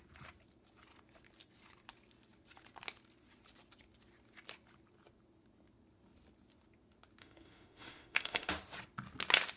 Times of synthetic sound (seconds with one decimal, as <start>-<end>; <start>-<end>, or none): 7.2-8.5